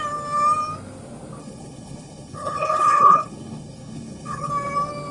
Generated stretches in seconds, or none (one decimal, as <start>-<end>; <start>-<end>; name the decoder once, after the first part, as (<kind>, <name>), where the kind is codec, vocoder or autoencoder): 1.4-4.5 (codec, HILCodec)